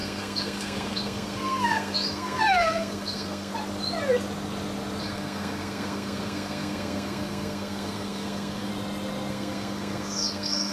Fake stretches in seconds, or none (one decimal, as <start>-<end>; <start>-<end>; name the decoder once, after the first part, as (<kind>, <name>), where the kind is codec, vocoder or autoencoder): 0.0-3.5 (codec, SNAC); 5.0-8.7; 9.3-10.7